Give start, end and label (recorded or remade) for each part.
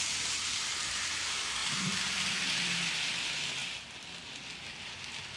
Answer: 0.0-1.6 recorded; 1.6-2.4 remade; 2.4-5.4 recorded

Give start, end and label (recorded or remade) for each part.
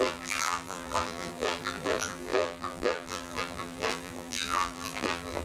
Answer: 0.0-5.4 remade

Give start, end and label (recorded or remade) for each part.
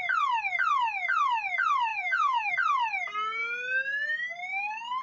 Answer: 0.0-1.9 recorded; 1.9-2.5 remade; 2.5-5.0 recorded